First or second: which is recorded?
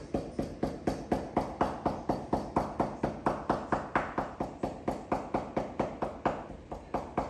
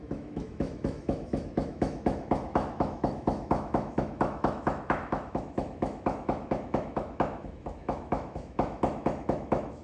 first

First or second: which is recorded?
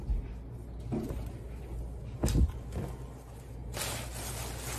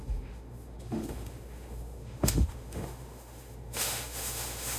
first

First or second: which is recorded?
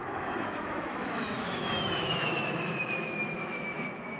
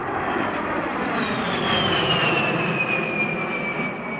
second